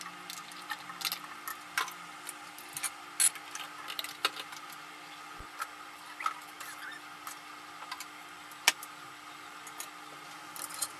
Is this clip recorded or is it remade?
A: recorded